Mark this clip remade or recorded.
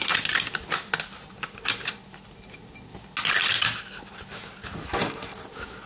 recorded